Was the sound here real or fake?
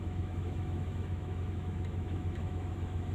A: fake